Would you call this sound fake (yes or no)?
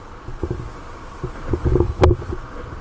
no